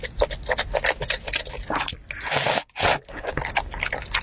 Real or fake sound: real